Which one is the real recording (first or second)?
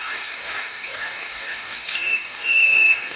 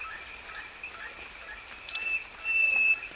second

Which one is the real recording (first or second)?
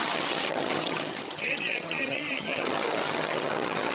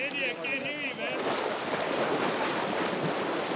second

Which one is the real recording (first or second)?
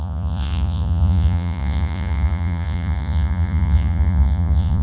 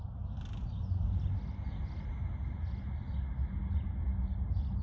second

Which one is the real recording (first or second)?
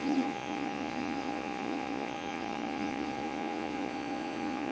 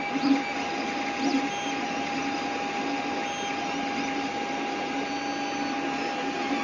second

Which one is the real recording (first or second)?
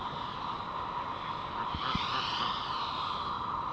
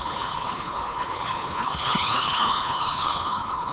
first